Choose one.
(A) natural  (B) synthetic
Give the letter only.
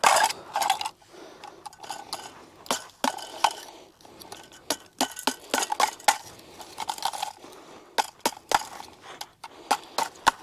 A